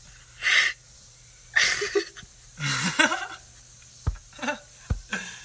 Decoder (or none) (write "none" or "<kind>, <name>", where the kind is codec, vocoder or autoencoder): none